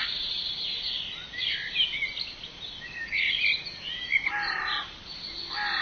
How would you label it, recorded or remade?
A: recorded